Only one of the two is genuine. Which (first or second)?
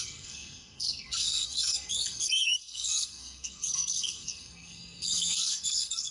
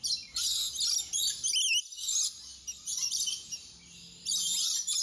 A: second